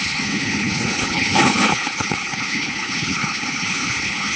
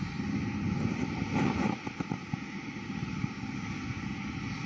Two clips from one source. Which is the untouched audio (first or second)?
second